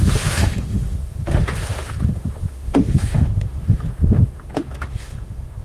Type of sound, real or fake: fake